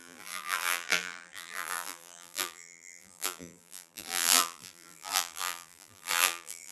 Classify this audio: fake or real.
fake